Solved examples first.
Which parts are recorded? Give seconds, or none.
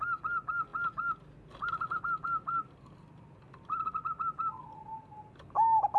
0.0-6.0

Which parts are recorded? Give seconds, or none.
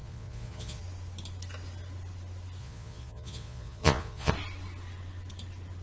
0.8-2.6; 4.3-5.8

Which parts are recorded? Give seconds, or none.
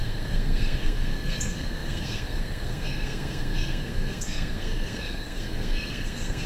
none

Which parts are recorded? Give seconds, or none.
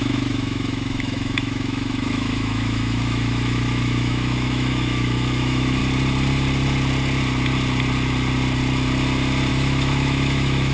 5.8-9.5